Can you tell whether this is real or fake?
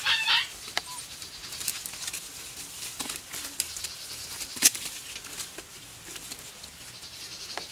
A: real